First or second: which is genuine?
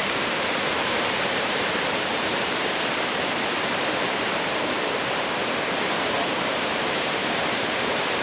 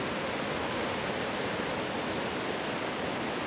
second